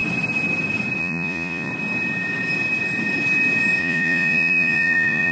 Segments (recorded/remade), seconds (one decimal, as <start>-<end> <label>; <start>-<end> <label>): 0.0-1.0 recorded; 1.0-1.7 remade; 1.7-3.8 recorded; 3.8-5.3 remade